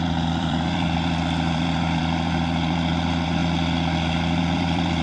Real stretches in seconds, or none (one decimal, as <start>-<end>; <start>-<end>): 3.4-4.4